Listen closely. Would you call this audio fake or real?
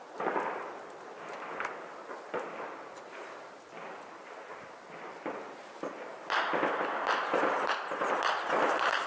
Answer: real